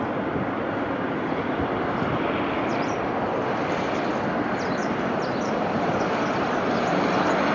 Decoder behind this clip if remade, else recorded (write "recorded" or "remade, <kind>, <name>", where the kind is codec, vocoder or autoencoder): remade, vocoder, BigVGAN v2